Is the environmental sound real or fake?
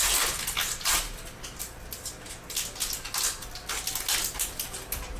real